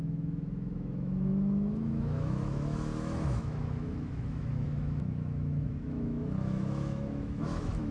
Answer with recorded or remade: remade